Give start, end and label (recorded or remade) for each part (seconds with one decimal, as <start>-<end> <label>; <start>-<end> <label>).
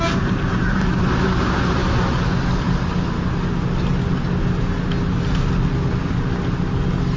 0.0-7.2 recorded